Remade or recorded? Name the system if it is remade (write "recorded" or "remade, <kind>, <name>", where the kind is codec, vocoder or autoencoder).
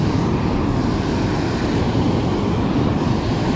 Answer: recorded